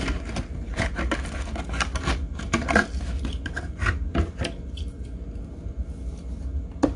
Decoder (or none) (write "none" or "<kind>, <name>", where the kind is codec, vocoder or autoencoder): none